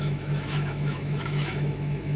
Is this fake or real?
fake